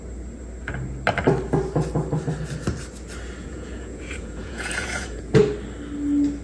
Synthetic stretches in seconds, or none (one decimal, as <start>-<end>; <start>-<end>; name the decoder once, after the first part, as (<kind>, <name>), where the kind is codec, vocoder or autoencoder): 3.4-5.4 (vocoder, Vocos)